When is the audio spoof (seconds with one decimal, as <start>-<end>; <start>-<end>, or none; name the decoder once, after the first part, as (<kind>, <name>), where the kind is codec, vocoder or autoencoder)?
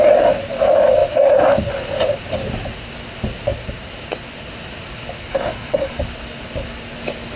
5.3-6.0 (autoencoder, DAC-VAE)